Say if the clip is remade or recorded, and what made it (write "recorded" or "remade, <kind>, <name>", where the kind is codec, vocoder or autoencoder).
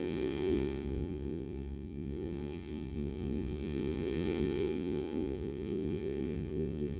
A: remade, vocoder, Vocos